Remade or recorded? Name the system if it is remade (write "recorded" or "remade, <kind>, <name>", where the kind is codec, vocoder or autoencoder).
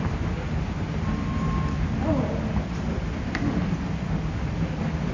recorded